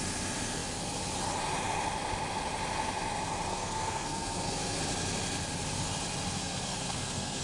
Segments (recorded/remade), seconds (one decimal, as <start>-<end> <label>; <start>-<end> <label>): 0.0-3.5 recorded; 3.5-4.8 remade; 4.8-6.4 recorded; 6.4-7.4 remade